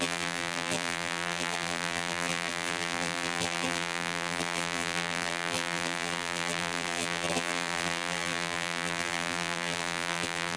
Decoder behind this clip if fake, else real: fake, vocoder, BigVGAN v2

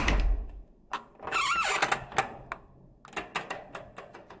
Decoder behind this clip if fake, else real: real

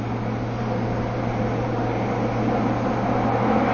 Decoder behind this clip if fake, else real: real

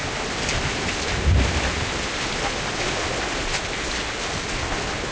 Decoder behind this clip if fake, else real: real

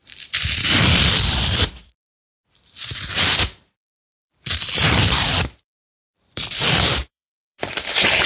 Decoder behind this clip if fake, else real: fake, vocoder, BigVGAN v2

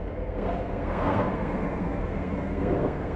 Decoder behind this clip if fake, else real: fake, codec, SNAC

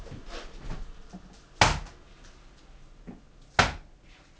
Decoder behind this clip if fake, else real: real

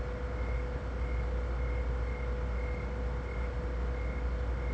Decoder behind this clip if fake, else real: real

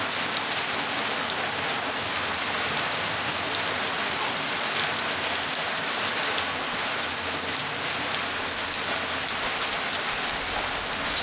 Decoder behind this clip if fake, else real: real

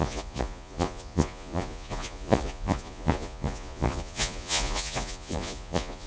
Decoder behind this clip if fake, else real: fake, vocoder, Vocos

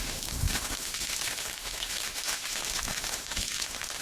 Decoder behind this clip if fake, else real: fake, autoencoder, DAC-VAE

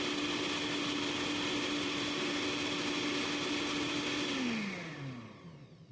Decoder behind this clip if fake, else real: real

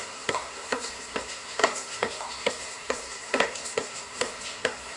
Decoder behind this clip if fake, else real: fake, codec, SNAC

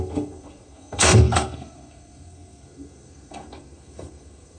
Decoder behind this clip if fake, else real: fake, codec, SNAC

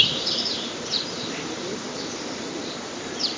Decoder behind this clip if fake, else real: fake, vocoder, BigVGAN v2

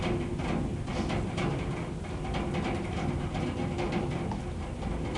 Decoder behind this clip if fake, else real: real